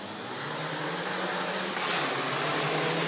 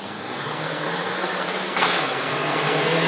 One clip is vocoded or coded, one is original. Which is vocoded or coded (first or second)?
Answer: second